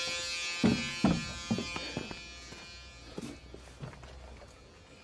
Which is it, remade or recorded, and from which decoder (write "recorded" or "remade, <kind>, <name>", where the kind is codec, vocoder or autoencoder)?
recorded